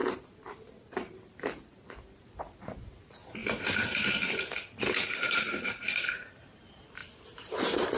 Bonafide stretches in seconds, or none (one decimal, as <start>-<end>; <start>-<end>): 0.0-2.2; 3.4-4.8